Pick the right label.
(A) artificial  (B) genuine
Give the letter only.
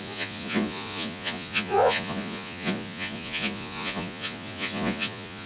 A